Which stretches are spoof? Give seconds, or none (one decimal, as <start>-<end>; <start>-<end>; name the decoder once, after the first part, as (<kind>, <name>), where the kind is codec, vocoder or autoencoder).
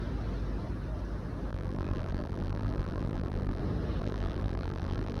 1.5-3.6 (vocoder, BigVGAN v2); 4.0-5.2